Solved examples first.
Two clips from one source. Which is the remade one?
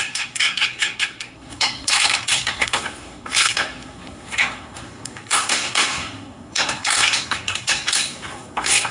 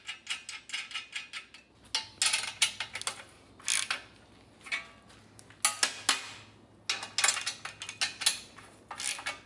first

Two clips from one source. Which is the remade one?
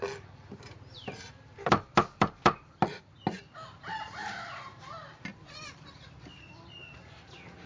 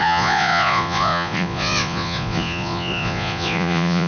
second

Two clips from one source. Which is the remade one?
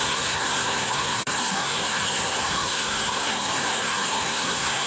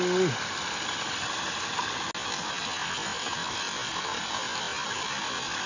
first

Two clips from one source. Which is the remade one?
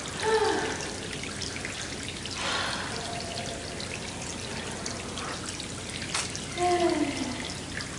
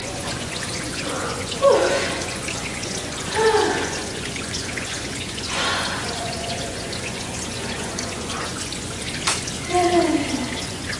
second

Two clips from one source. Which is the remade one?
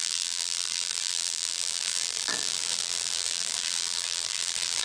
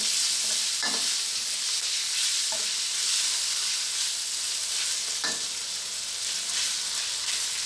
first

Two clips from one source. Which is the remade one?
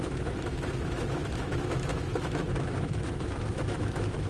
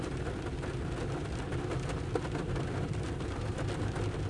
first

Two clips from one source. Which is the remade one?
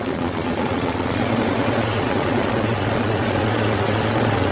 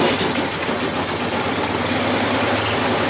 first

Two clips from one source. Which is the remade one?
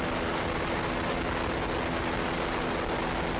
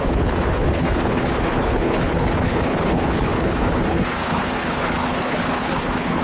second